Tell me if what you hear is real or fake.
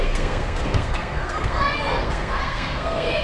fake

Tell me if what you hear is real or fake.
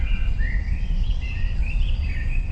fake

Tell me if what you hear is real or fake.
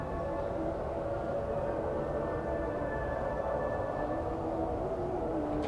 real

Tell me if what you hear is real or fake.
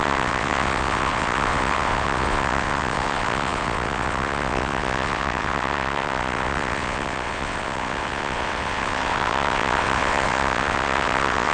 fake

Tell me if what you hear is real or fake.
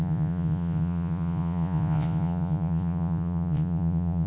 fake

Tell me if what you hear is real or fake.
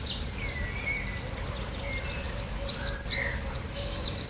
real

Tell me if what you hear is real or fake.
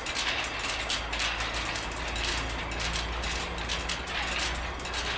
real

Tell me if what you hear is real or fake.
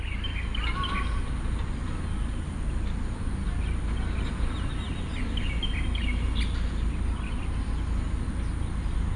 real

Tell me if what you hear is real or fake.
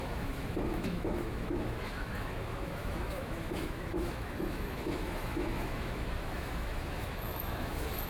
fake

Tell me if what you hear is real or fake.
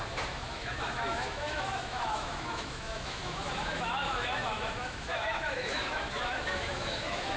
fake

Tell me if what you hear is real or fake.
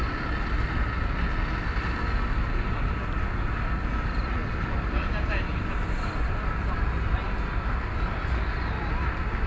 real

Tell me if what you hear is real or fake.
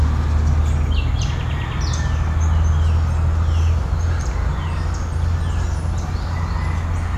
real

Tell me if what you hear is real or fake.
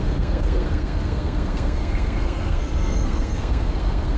fake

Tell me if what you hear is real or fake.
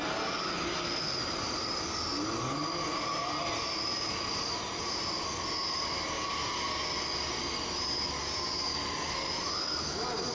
real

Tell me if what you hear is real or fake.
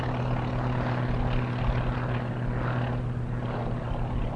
real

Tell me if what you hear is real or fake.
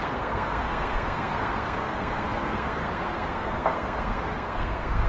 fake